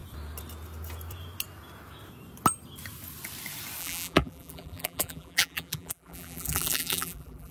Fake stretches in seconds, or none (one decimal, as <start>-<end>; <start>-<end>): 3.8-7.5